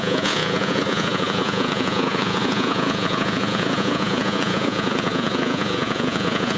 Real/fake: fake